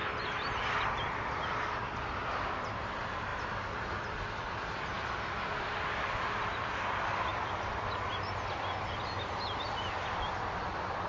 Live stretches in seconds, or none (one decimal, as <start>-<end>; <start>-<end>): 0.0-11.1